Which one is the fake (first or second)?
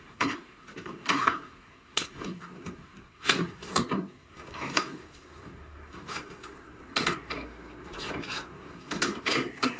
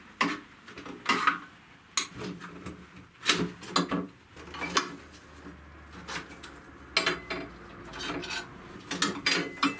first